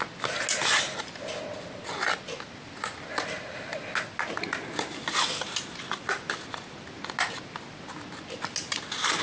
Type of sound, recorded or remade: recorded